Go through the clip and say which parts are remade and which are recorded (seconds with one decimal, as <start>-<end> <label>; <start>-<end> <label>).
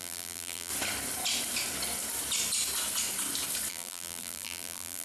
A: 0.0-0.7 remade; 0.7-3.7 recorded; 3.7-5.0 remade